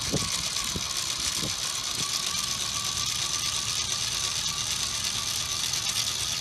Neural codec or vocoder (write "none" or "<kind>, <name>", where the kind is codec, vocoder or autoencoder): none